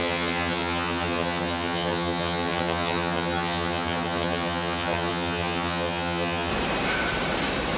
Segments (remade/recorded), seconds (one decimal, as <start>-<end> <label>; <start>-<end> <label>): 0.0-6.5 remade; 6.5-7.8 recorded